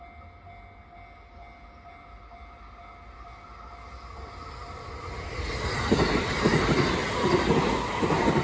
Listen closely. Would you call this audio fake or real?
real